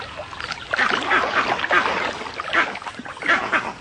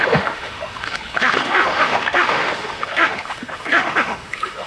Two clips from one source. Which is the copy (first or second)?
second